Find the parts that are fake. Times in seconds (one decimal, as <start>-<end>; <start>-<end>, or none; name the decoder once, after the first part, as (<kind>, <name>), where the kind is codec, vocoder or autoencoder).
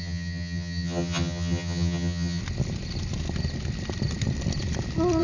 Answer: 0.0-2.4 (vocoder, HiFi-GAN)